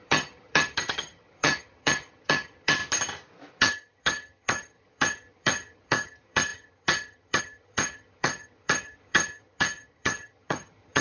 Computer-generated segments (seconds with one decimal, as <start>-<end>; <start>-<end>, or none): 0.0-2.8; 3.6-11.0